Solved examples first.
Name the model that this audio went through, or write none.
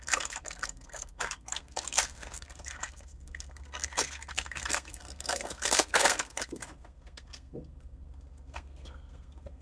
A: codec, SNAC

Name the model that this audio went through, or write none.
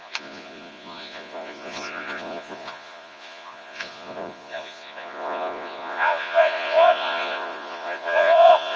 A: vocoder, Vocos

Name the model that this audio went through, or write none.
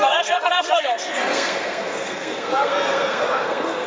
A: codec, SNAC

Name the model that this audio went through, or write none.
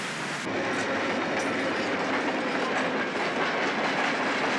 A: none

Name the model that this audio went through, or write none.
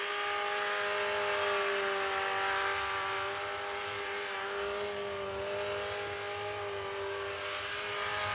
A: none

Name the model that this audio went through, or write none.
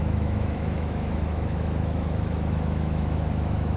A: autoencoder, DAC-VAE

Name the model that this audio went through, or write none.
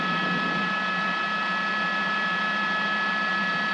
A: none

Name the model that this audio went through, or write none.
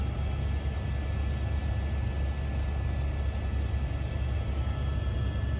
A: none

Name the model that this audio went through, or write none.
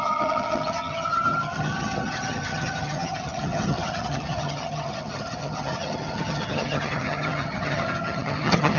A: vocoder, HiFi-GAN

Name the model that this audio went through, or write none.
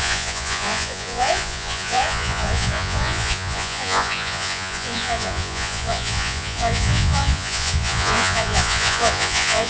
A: vocoder, Vocos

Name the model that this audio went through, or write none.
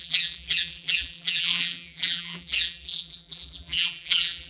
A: vocoder, BigVGAN v2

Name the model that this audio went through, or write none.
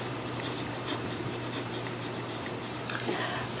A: vocoder, BigVGAN v2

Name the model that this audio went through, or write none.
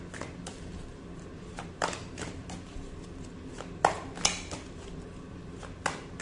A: none